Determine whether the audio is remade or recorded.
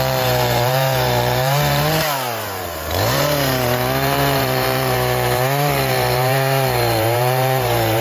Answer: remade